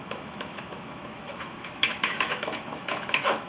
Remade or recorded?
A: remade